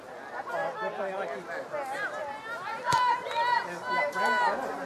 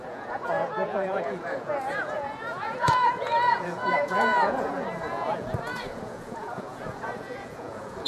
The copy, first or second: second